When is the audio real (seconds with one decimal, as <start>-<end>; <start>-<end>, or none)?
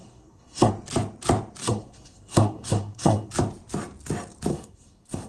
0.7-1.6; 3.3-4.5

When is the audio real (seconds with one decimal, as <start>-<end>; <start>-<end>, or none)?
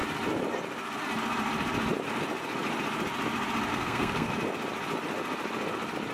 0.0-3.7; 4.3-6.1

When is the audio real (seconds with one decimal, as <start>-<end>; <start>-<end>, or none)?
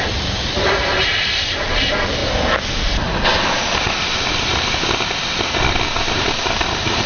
2.2-6.5